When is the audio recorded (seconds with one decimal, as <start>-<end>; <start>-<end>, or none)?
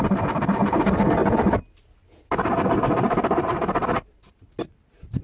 0.0-1.2; 4.3-5.2